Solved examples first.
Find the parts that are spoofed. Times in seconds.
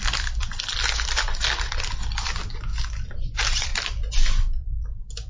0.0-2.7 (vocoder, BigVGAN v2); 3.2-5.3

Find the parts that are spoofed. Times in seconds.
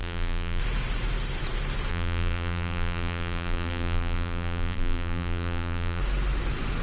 0.0-0.6 (vocoder, BigVGAN v2); 1.9-6.0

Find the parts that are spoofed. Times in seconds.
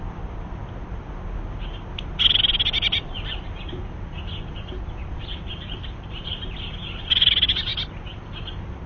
5.3-6.6 (vocoder, BigVGAN v2)